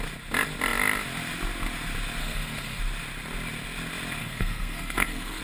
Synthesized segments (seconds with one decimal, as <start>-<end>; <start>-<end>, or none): 2.2-2.8; 4.2-5.4